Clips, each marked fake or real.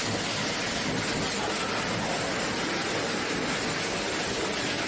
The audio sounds real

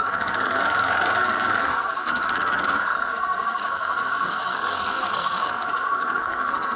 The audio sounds fake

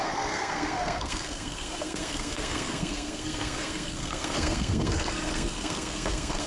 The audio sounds fake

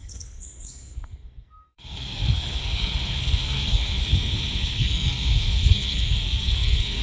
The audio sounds fake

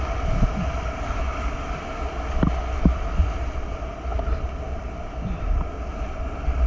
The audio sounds real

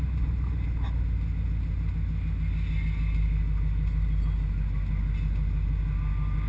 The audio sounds real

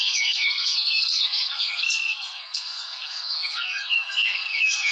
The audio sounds fake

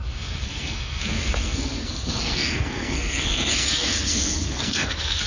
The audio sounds fake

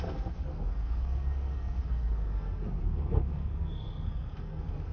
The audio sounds fake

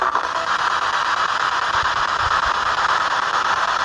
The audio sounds real